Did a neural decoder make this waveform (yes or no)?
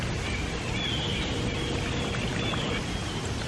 no